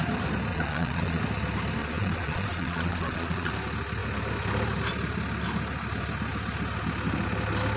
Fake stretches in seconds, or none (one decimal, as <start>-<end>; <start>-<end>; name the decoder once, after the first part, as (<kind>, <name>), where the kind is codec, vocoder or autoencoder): 0.5-1.2 (vocoder, Vocos); 1.8-3.5